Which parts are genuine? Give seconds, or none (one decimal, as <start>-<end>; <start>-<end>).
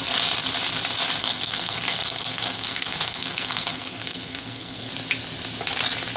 0.0-1.2; 4.9-6.2